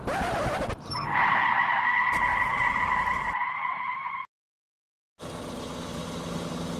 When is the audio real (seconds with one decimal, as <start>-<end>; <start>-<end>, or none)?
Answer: 0.0-2.3; 4.6-6.8